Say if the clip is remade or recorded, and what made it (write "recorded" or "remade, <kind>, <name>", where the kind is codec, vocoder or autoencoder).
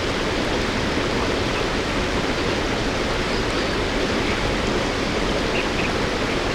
recorded